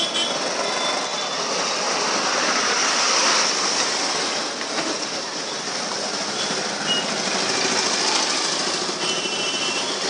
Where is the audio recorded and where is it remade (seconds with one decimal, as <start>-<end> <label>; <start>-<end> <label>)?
0.0-1.1 recorded; 1.1-2.8 remade; 2.8-10.1 recorded